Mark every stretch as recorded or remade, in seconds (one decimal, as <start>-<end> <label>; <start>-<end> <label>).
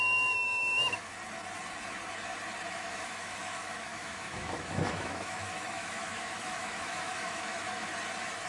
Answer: 0.0-1.1 remade; 1.1-2.7 recorded; 2.7-7.9 remade; 7.9-8.5 recorded